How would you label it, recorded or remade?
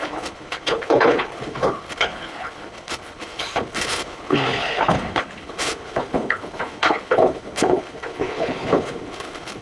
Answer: remade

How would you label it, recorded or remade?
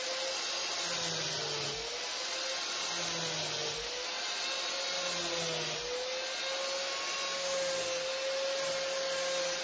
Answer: recorded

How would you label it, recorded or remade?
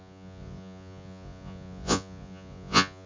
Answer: remade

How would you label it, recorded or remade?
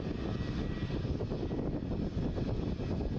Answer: recorded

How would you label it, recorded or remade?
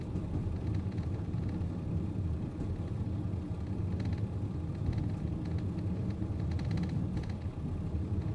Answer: recorded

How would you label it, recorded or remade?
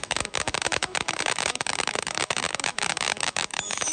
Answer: remade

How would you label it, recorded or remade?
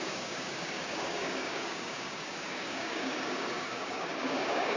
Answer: remade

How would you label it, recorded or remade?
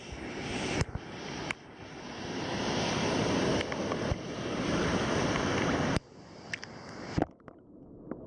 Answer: recorded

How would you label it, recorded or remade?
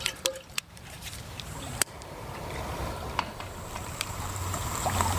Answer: remade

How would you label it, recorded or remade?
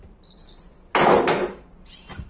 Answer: recorded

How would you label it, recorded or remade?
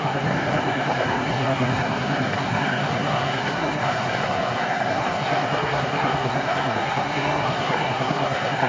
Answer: remade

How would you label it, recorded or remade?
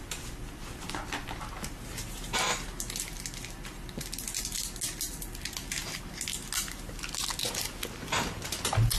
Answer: recorded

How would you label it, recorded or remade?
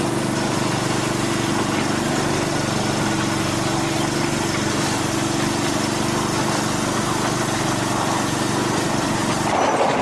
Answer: recorded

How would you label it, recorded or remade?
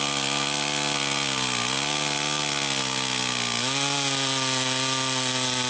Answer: recorded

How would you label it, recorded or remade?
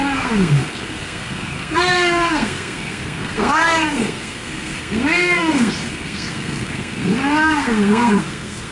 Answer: remade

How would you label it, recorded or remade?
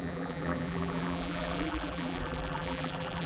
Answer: remade